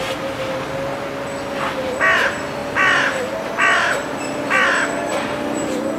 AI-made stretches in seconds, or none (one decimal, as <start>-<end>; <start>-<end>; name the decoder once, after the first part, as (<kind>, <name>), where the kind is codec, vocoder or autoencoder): none